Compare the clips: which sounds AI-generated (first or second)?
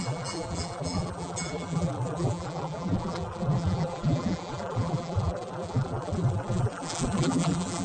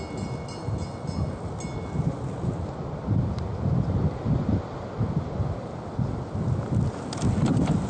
first